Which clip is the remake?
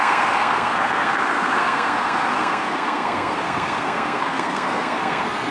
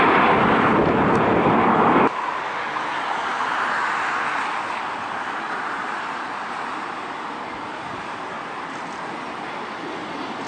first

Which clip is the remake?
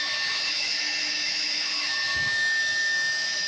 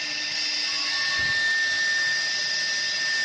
first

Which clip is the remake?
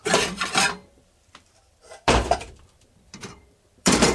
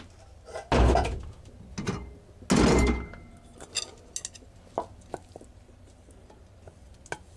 first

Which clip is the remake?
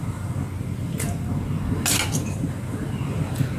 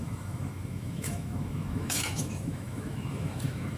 second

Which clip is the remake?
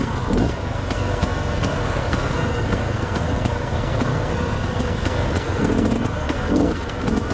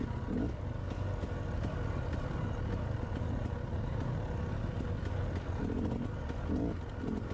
first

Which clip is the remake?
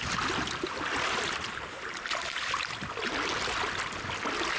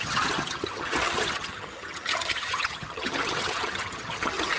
second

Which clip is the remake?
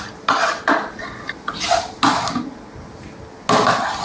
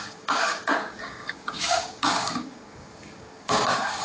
second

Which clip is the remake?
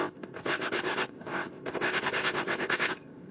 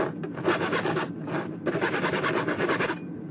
first